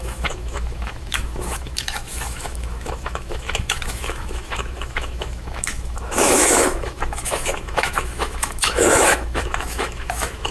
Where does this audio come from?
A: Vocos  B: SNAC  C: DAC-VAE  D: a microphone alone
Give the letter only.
C